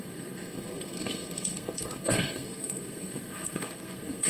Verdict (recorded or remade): remade